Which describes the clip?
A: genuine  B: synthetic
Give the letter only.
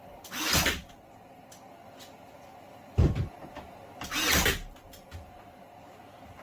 A